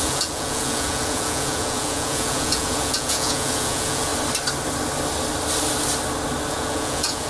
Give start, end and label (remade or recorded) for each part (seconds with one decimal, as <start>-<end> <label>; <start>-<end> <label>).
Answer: 0.0-4.1 remade; 4.1-6.5 recorded; 6.5-7.3 remade